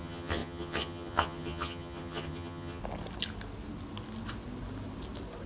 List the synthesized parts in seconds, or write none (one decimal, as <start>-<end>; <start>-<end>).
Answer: 0.0-2.8